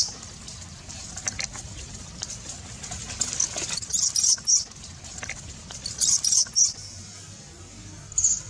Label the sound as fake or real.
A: real